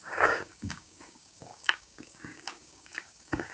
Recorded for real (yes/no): no